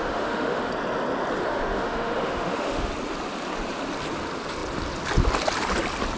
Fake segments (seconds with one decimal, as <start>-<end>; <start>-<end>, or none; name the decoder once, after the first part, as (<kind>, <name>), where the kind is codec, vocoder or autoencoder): 0.0-0.7 (autoencoder, DAC-VAE); 1.4-2.9